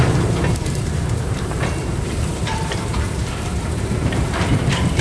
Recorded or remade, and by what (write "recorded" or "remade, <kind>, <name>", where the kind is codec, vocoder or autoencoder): remade, vocoder, BigVGAN v2